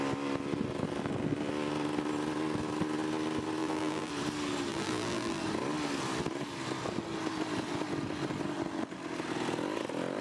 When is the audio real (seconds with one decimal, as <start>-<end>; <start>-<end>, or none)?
0.0-3.6; 4.1-4.7; 5.4-10.2